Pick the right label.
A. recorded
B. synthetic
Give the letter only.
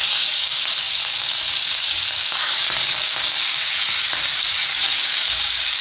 B